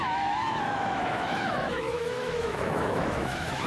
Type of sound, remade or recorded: remade